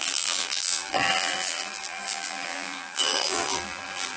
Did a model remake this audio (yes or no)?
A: yes